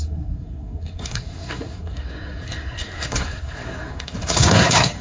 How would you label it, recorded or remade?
remade